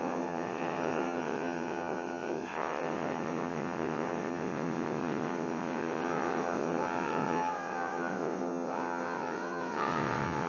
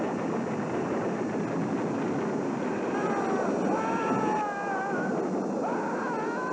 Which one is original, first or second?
second